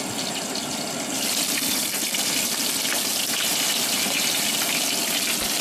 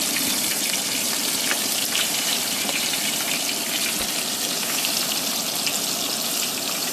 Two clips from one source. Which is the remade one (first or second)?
second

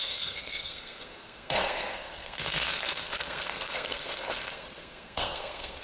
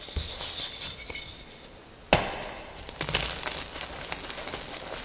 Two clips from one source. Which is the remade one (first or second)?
first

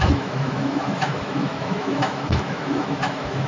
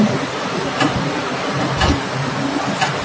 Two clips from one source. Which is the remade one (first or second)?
first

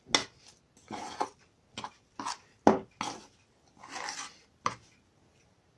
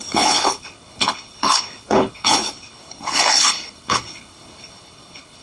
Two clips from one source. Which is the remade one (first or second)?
second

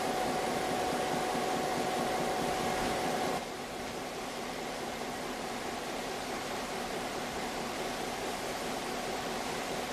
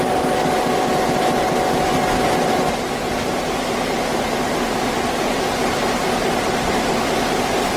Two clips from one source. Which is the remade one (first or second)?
first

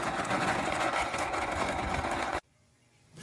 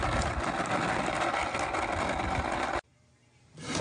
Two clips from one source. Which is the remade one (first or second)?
first